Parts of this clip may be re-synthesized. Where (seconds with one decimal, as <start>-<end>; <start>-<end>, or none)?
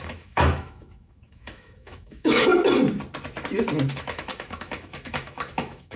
0.0-2.5; 3.9-6.0